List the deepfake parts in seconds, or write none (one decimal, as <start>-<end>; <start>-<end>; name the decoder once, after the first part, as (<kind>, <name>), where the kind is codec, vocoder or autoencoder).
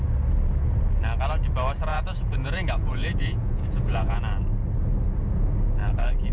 1.9-4.2 (vocoder, Vocos)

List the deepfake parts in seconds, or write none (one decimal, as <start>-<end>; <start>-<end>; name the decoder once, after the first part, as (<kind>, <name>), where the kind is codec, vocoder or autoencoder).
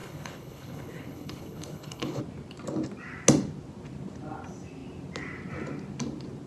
0.0-2.2 (codec, HILCodec)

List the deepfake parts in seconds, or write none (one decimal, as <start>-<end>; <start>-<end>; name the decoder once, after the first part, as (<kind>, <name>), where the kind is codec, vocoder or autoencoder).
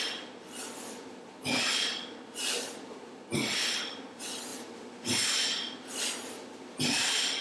none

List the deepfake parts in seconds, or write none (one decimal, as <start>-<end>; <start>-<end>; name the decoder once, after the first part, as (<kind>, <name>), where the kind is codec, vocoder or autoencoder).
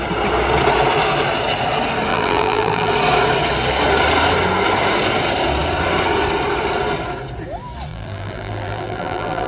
2.1-2.9 (vocoder, BigVGAN v2); 7.9-9.5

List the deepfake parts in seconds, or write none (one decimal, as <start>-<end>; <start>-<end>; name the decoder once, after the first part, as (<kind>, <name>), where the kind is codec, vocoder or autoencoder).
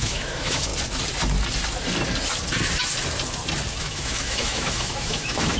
0.0-0.7 (autoencoder, DAC-VAE); 3.8-5.6